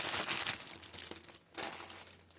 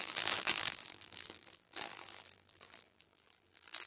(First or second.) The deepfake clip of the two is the second